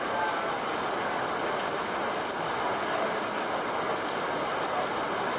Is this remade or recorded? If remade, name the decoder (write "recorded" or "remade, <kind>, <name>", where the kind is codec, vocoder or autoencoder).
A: recorded